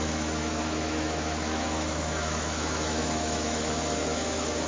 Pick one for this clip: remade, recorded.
remade